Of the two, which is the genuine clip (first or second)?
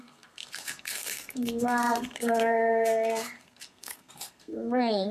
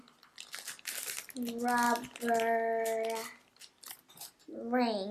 second